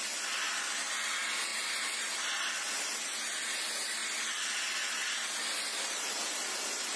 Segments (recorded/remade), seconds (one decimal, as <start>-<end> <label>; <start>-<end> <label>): 0.0-7.0 recorded